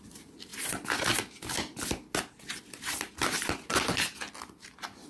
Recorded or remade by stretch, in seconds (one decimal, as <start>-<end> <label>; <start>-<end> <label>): 0.0-5.1 recorded